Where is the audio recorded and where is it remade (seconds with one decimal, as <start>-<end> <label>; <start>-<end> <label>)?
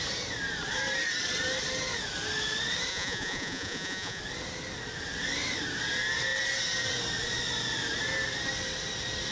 0.0-2.9 recorded; 2.9-4.2 remade; 4.2-9.3 recorded